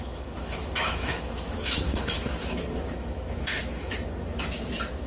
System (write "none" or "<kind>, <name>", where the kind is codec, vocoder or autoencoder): autoencoder, DAC-VAE